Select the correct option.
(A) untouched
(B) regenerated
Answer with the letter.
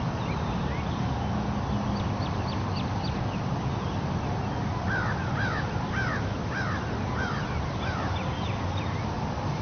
A